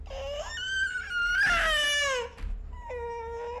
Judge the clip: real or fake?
real